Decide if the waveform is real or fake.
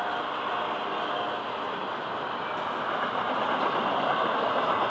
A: real